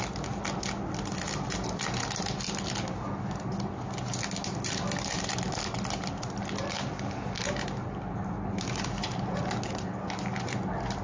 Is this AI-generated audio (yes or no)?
no